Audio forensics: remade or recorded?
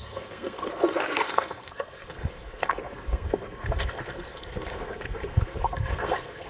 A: remade